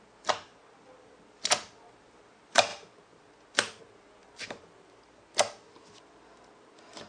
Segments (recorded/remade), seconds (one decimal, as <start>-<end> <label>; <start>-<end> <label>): 0.0-7.1 recorded